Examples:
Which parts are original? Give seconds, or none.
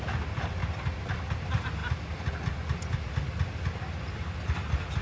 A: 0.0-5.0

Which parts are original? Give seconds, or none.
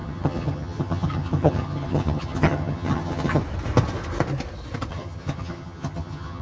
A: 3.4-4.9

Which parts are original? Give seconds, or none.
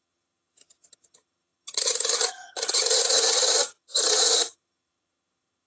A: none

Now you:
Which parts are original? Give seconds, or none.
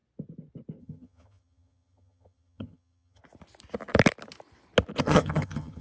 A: 0.0-0.8; 3.2-5.0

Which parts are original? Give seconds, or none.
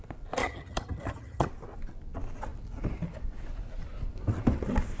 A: 0.0-0.4; 1.5-5.0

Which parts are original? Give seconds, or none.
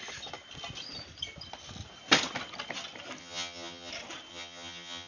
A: 0.0-3.2; 3.9-4.3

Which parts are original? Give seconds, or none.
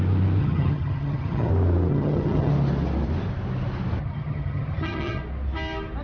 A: 0.0-0.4; 1.5-1.9; 2.5-4.0; 5.2-6.0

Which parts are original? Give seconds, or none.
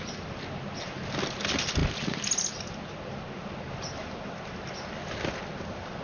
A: 0.0-6.0